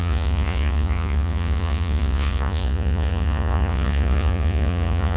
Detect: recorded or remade remade